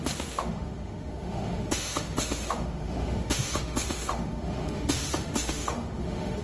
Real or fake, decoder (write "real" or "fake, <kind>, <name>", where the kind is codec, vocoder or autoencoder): fake, autoencoder, DAC-VAE